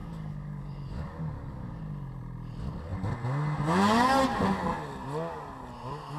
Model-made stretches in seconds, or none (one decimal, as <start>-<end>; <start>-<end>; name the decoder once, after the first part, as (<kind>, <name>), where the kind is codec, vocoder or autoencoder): 0.0-1.8 (codec, DAC)